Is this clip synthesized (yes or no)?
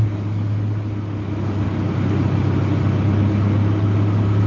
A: no